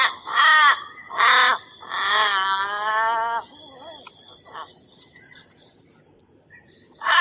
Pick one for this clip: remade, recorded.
recorded